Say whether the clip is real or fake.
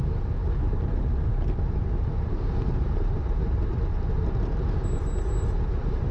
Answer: real